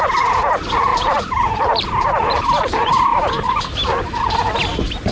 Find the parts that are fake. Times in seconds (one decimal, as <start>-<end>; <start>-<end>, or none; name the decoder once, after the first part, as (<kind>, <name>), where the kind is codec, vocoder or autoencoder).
0.9-2.4 (vocoder, BigVGAN v2); 3.1-4.2